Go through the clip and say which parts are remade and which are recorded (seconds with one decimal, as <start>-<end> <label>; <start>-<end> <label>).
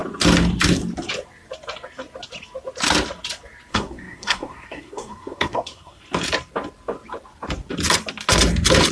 0.0-3.7 recorded; 3.7-6.0 remade; 6.0-8.9 recorded